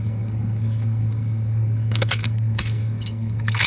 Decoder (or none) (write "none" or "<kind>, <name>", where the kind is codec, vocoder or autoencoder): codec, SNAC